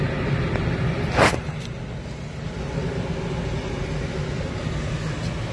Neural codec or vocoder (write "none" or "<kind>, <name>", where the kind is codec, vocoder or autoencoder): none